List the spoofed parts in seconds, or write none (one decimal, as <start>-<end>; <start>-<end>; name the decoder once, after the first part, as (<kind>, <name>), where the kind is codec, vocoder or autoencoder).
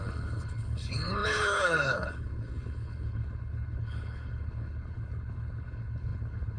0.0-6.6 (codec, HILCodec)